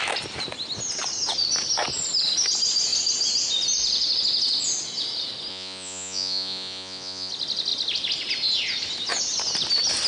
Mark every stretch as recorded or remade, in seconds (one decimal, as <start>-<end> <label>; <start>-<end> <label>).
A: 0.0-5.5 recorded; 5.5-7.3 remade; 7.3-10.1 recorded